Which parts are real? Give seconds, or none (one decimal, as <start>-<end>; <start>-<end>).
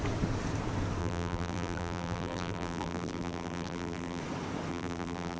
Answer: 0.0-1.0; 4.2-4.7